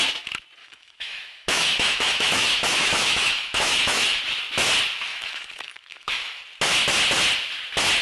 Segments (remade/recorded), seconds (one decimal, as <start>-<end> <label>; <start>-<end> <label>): 0.0-0.6 recorded; 0.6-4.2 remade; 4.2-5.1 recorded; 5.1-6.4 remade; 6.4-8.0 recorded